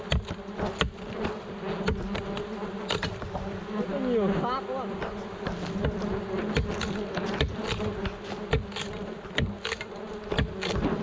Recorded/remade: recorded